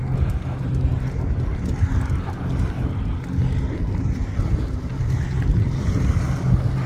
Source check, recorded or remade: recorded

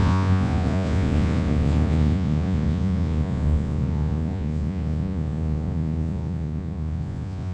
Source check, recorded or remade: remade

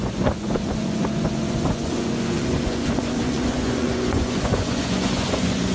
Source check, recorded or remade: remade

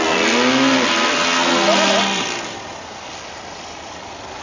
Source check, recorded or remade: recorded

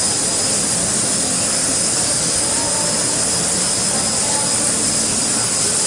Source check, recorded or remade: recorded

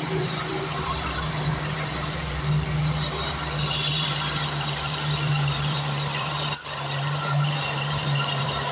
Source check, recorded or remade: remade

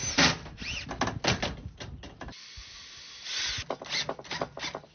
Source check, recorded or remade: recorded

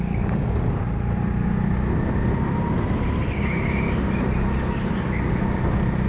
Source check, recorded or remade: recorded